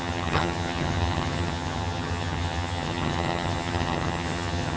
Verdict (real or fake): fake